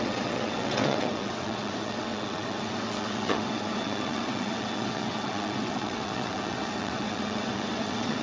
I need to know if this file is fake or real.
fake